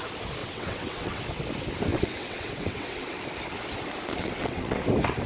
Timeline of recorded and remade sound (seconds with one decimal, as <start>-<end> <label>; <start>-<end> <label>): 0.0-0.4 recorded; 0.4-1.2 remade; 1.2-1.9 recorded; 1.9-3.1 remade; 3.1-4.2 recorded; 4.2-4.8 remade; 4.8-5.3 recorded